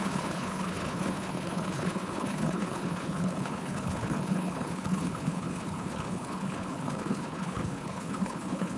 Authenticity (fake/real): fake